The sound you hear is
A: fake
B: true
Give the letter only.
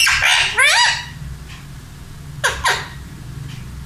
B